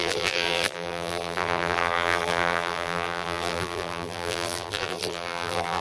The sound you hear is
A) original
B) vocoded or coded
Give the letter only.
B